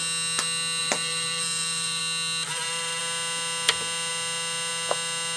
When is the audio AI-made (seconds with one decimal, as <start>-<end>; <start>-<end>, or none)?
0.8-2.0; 2.5-3.0